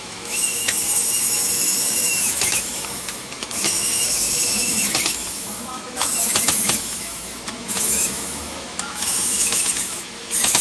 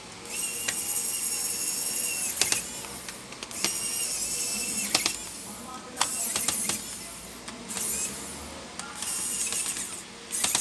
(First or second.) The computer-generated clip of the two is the first